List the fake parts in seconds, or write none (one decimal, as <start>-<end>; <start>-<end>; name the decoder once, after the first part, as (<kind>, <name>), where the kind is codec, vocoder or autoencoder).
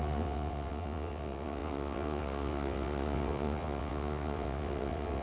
0.0-5.2 (vocoder, WaveNeXt)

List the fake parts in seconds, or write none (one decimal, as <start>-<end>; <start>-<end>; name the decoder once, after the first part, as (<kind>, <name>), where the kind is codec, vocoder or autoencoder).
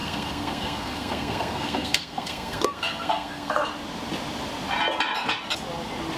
0.0-3.7 (codec, SNAC)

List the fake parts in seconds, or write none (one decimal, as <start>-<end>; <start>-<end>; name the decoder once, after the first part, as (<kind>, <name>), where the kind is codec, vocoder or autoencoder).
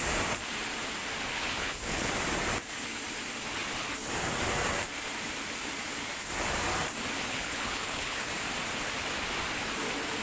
1.3-2.1 (codec, HILCodec); 7.3-8.3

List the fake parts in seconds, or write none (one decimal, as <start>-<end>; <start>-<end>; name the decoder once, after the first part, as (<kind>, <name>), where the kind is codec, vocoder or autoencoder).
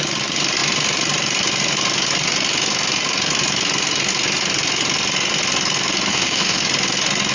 6.1-6.6 (autoencoder, DAC-VAE)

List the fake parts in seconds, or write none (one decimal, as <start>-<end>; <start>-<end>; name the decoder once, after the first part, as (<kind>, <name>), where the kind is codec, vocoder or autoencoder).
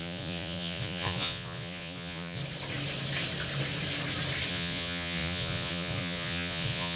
0.0-2.4 (vocoder, Vocos); 4.5-7.0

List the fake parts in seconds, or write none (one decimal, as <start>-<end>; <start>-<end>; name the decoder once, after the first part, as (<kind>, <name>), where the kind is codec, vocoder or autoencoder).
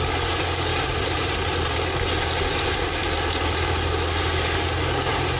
0.7-1.8 (vocoder, BigVGAN v2)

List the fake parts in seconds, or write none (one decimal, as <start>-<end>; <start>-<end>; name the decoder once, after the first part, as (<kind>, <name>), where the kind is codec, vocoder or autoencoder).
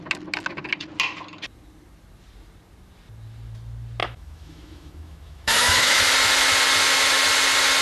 4.0-6.0 (autoencoder, DAC-VAE)